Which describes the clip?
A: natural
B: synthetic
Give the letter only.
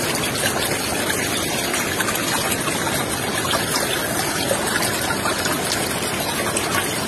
A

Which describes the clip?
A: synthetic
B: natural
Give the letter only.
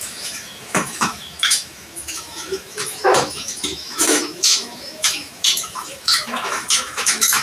A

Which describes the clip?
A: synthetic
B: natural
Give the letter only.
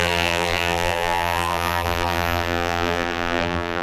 A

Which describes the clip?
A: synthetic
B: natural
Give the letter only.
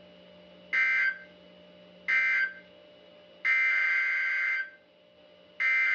B